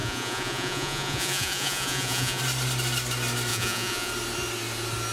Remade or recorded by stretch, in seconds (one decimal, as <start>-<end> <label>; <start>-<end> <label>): 0.0-2.4 remade; 2.4-3.5 recorded; 3.5-4.1 remade; 4.1-5.1 recorded